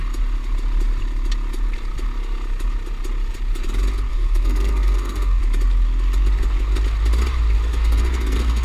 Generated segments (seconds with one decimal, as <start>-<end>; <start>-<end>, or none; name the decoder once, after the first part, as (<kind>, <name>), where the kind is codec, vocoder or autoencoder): 4.1-5.4 (codec, SNAC); 7.7-8.6

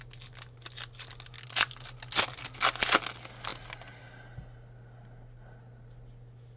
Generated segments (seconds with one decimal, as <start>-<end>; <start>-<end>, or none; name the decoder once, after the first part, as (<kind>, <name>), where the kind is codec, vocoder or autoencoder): none

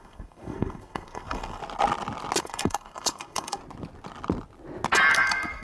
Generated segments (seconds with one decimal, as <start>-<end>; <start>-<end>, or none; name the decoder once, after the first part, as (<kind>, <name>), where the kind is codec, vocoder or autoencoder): 0.0-1.6 (codec, SNAC); 2.4-3.6; 5.1-5.6

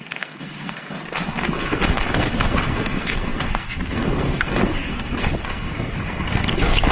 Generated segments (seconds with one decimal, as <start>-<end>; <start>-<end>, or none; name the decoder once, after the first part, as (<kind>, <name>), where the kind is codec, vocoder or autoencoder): 0.0-6.9 (codec, SNAC)

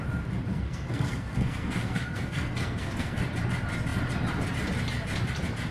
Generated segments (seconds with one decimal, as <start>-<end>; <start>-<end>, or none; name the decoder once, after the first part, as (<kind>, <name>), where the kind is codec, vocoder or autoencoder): 0.5-3.2 (codec, SNAC)